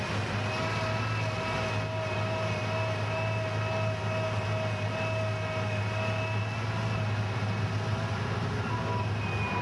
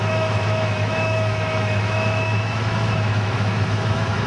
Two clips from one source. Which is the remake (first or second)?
second